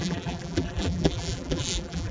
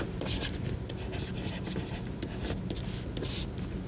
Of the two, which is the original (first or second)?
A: second